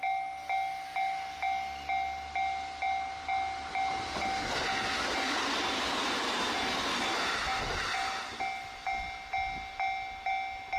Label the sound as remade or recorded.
recorded